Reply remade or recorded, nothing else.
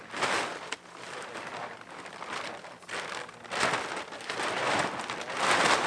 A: recorded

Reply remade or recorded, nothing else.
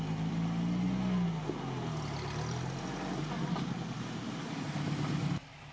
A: recorded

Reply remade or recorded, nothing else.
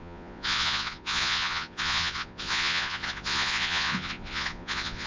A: remade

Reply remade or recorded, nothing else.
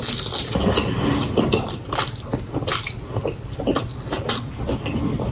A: recorded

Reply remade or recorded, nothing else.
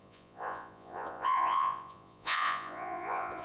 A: remade